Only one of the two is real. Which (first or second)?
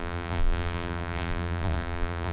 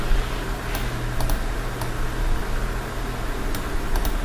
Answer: second